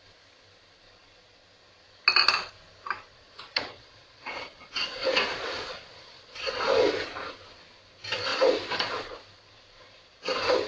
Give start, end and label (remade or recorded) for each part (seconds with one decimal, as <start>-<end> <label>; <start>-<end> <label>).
0.0-3.1 recorded; 3.1-6.5 remade; 6.5-10.7 recorded